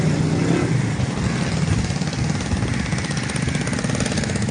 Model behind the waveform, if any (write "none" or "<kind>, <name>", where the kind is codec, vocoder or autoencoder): none